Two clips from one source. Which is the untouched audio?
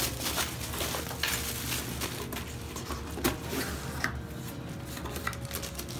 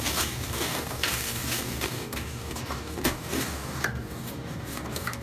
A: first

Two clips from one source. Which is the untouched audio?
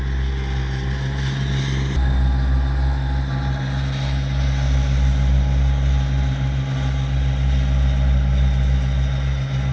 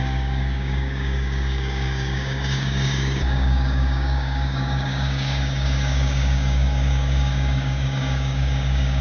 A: first